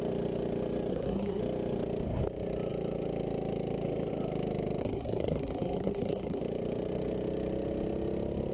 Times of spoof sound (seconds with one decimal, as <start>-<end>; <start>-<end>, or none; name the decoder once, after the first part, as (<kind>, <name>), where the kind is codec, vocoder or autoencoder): 0.9-1.4 (codec, SNAC); 4.8-6.4